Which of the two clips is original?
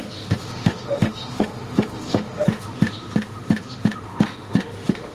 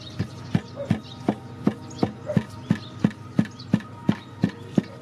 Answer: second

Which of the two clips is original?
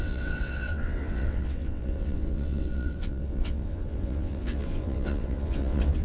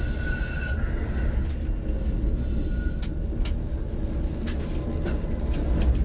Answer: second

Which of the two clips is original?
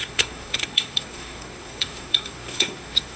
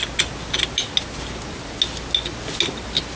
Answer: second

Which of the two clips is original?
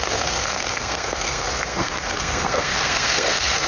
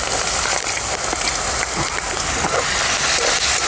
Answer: second